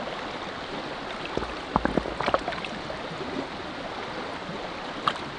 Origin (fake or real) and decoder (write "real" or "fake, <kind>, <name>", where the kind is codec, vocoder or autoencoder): real